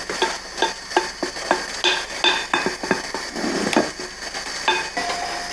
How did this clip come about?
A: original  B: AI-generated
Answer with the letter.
A